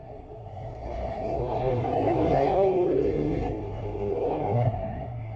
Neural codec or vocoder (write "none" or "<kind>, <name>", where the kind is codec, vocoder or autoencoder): codec, SNAC